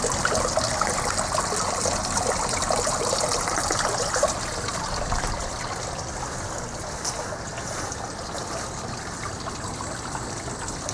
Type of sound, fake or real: real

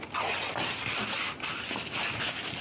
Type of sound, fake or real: real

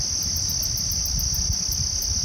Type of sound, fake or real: real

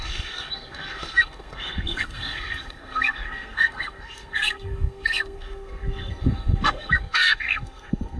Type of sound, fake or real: fake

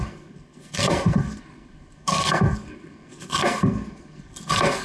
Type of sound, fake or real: fake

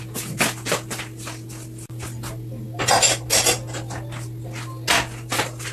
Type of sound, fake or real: real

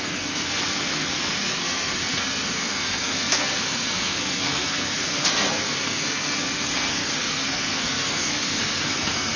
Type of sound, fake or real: fake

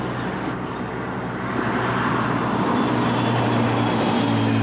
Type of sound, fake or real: real